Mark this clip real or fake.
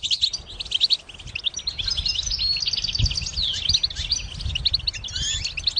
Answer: real